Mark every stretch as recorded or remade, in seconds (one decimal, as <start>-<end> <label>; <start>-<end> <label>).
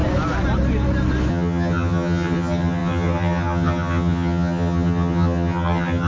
0.0-1.3 recorded; 1.3-6.1 remade